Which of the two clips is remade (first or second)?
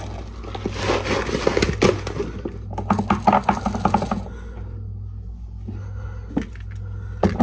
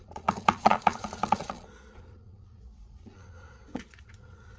second